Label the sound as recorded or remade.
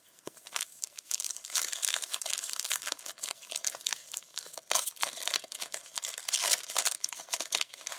remade